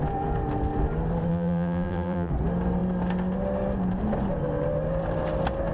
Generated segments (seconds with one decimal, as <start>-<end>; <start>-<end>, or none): 1.3-2.3